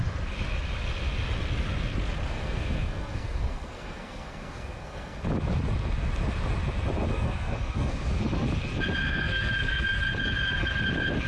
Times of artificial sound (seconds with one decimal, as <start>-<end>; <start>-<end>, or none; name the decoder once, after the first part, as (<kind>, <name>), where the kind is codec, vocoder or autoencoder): 2.3-5.2 (codec, SNAC); 7.1-8.2; 9.0-10.0